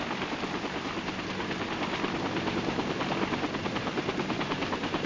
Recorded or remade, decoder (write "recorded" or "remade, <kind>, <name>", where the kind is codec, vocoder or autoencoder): remade, vocoder, BigVGAN v2